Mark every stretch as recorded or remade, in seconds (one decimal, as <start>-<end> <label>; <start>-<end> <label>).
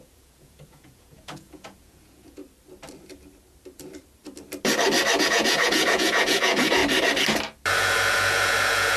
0.0-2.4 remade; 2.4-5.2 recorded; 5.2-6.8 remade; 6.8-7.7 recorded; 7.7-9.0 remade